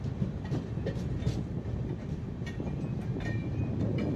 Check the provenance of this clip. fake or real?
real